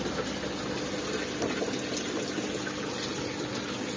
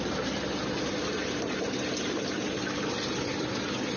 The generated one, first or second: second